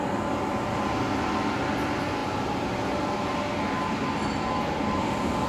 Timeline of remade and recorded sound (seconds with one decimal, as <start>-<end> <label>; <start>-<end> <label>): 0.0-5.5 recorded